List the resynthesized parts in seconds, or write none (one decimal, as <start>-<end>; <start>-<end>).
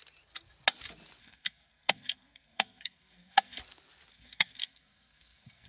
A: 1.2-3.6; 4.1-5.7